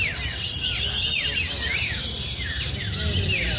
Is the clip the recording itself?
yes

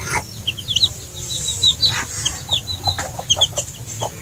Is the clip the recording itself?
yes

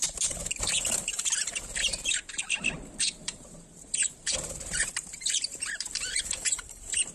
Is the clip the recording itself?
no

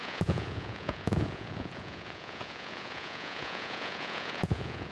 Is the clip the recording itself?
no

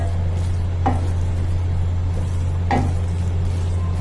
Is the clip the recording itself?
yes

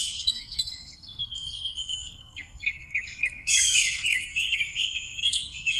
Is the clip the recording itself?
no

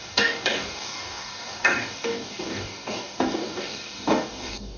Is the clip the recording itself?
no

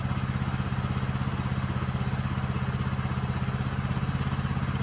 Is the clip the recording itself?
yes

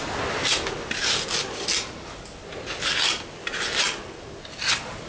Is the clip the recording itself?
yes